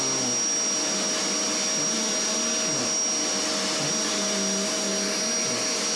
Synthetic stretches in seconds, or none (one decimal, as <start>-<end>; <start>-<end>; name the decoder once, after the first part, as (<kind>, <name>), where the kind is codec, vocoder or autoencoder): none